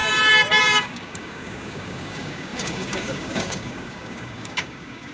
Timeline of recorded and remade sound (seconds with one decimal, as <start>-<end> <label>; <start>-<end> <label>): 0.0-0.6 recorded; 0.6-5.1 remade